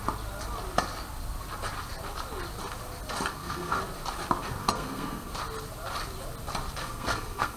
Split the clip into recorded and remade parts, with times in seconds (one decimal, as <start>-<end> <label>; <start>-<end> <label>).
0.0-3.3 recorded; 3.3-3.8 remade; 3.8-4.6 recorded; 4.6-5.3 remade; 5.3-6.8 recorded; 6.8-7.6 remade